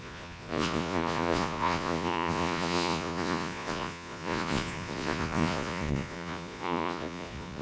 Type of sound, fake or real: fake